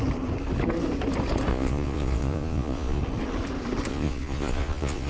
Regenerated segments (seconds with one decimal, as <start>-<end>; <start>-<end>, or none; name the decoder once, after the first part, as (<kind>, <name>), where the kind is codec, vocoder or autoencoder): 1.5-3.0 (vocoder, Vocos); 3.9-5.1